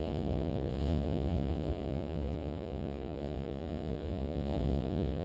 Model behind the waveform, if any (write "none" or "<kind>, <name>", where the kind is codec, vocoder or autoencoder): vocoder, Vocos